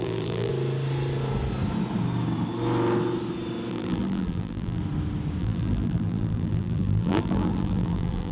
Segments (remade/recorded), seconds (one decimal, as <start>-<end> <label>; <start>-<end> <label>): 0.0-0.5 remade; 0.5-3.7 recorded; 3.7-4.8 remade; 4.8-5.4 recorded; 5.4-8.3 remade